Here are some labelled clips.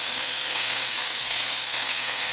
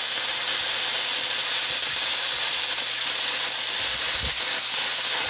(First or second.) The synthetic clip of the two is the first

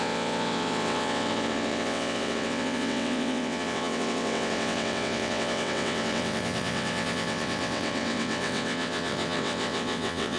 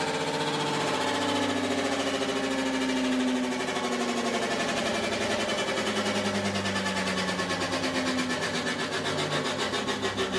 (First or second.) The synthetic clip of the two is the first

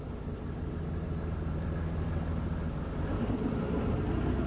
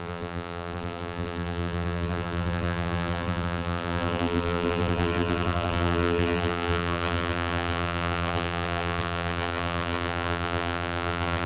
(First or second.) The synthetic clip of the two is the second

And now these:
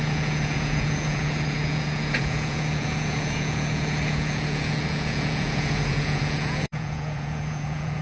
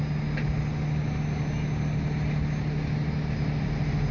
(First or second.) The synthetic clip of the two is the first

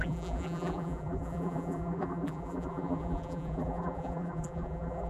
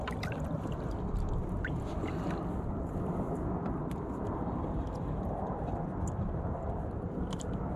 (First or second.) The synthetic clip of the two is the first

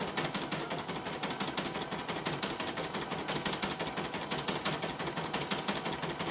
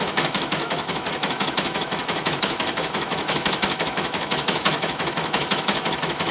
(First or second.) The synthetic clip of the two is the second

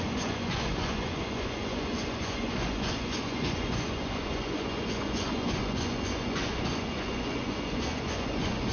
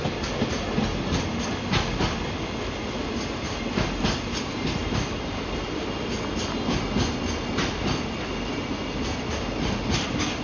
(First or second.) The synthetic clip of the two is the first